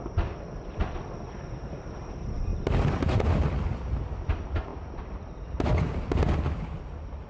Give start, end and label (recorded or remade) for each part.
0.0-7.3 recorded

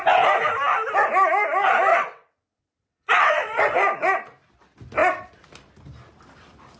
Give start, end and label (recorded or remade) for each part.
0.0-1.9 recorded; 1.9-3.6 remade; 3.6-6.8 recorded